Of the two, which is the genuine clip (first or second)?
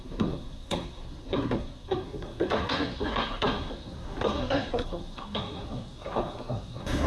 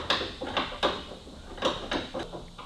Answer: second